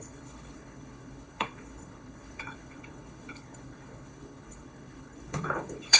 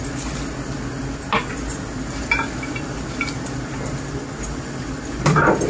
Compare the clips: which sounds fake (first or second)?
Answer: first